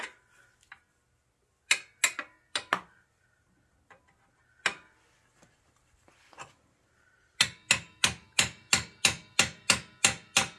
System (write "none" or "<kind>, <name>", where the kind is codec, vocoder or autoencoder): none